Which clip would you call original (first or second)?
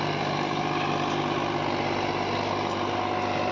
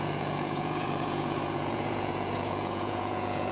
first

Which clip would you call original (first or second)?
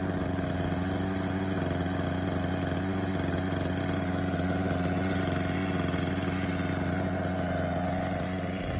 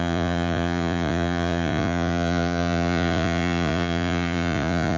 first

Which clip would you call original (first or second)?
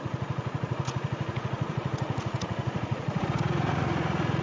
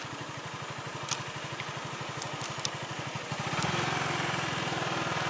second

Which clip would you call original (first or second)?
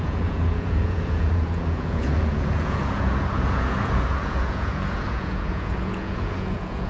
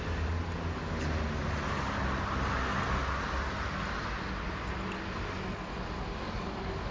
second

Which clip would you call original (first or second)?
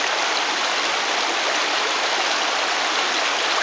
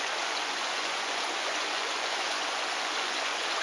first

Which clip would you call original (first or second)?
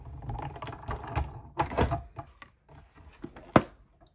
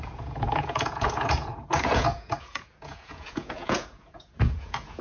first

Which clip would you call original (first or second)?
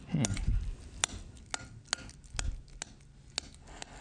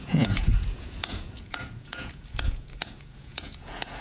first